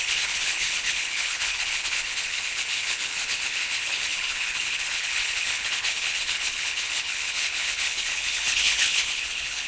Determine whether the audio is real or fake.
fake